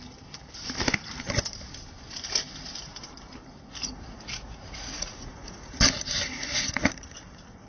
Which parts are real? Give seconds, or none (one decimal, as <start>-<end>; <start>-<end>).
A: 0.0-3.8; 5.8-6.3; 6.9-7.7